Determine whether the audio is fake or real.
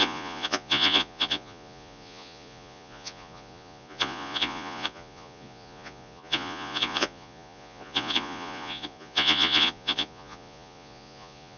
fake